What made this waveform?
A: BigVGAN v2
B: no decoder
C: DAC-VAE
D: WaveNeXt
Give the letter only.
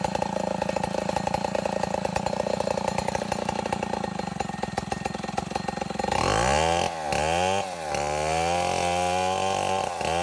B